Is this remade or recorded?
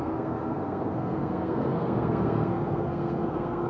remade